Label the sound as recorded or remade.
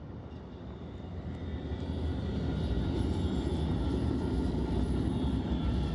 recorded